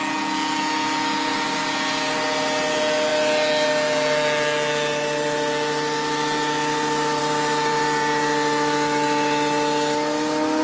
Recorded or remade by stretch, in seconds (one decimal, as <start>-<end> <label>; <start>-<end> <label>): 0.0-10.6 recorded